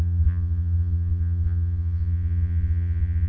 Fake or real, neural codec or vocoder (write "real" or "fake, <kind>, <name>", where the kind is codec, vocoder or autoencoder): fake, vocoder, Vocos